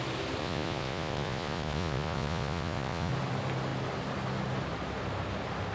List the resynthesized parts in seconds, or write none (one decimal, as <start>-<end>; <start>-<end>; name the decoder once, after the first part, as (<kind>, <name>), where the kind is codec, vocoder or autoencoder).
0.4-3.1 (vocoder, Vocos)